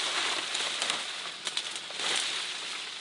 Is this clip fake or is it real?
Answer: real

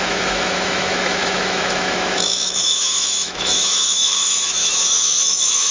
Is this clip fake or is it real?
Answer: fake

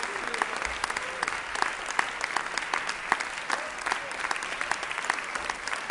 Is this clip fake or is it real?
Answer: real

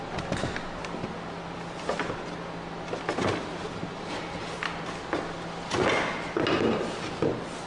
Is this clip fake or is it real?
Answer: real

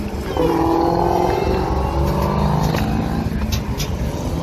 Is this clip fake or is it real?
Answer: real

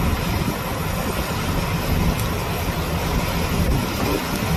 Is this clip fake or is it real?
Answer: real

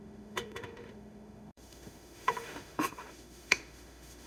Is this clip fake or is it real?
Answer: fake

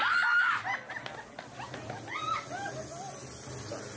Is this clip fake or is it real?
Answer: real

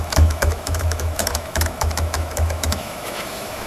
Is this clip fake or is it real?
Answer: fake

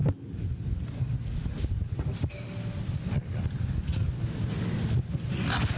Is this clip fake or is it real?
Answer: real